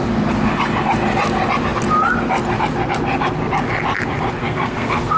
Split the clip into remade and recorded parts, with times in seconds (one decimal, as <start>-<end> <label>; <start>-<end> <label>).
0.0-4.4 recorded; 4.4-5.2 remade